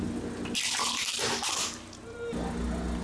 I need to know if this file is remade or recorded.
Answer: recorded